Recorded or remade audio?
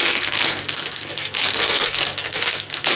remade